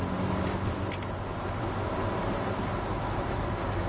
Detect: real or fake real